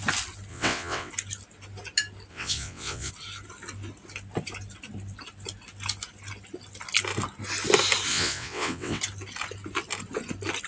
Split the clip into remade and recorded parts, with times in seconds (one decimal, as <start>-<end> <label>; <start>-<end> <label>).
0.0-0.5 recorded; 0.5-1.1 remade; 1.1-2.3 recorded; 2.3-3.1 remade; 3.1-8.1 recorded; 8.1-9.0 remade; 9.0-10.7 recorded